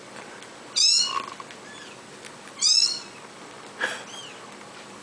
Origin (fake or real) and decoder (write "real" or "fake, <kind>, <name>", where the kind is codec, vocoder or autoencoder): real